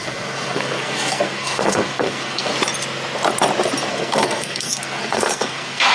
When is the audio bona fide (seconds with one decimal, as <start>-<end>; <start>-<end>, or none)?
2.5-3.9